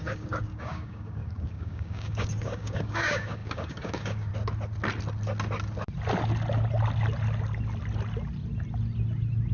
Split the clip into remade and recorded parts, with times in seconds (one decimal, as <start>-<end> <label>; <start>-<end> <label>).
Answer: 0.0-4.3 remade; 4.3-9.5 recorded